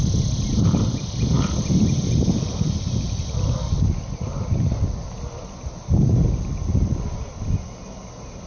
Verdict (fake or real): real